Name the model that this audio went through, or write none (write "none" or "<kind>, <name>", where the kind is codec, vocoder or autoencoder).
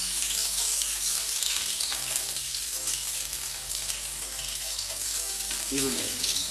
codec, DAC